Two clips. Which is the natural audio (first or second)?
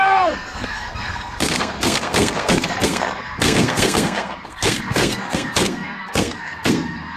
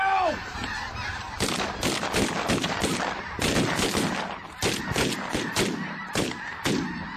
second